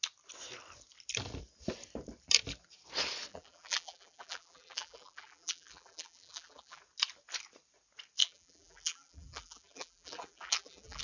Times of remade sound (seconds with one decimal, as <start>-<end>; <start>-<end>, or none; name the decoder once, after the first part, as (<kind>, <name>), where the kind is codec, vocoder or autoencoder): 3.3-6.8 (vocoder, BigVGAN v2); 8.2-11.0